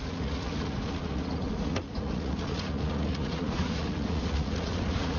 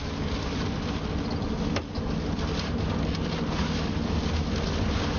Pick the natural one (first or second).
second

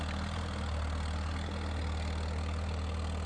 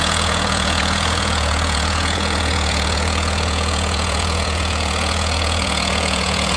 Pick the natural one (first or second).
first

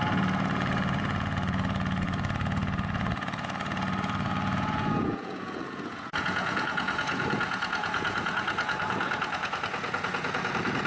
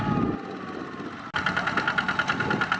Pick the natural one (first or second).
second